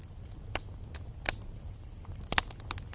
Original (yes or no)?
yes